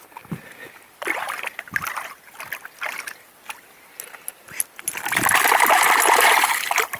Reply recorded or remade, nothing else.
recorded